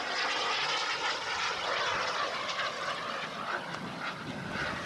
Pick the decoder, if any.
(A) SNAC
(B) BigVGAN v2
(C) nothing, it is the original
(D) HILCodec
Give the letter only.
C